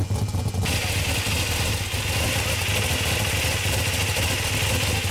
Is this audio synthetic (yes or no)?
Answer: no